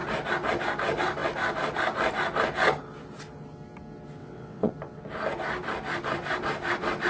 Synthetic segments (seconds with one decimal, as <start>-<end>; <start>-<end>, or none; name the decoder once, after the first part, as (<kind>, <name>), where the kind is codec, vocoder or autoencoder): 4.2-4.7 (vocoder, WaveNeXt)